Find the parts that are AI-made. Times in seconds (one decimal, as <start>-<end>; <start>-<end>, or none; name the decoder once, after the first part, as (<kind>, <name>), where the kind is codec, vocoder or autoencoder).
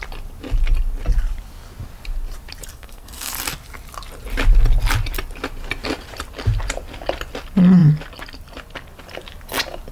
2.7-3.3 (codec, SNAC)